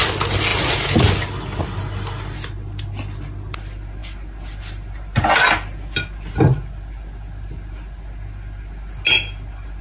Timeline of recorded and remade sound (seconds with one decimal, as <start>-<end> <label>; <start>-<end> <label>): 0.0-9.8 recorded